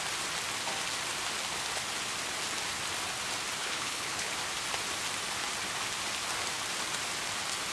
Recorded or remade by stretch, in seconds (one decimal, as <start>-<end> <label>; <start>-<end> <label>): 0.0-3.6 recorded; 3.6-4.3 remade; 4.3-7.7 recorded